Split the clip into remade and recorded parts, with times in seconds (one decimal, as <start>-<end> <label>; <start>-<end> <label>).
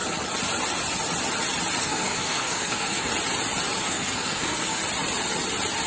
0.0-1.8 recorded; 1.8-3.1 remade; 3.1-3.8 recorded; 3.8-4.8 remade; 4.8-5.9 recorded